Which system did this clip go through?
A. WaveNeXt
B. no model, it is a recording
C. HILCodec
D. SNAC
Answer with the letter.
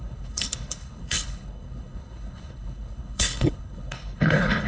C